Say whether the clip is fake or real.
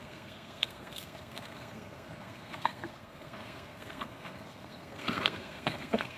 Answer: fake